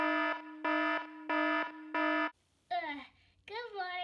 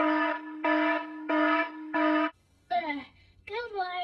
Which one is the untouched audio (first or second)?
first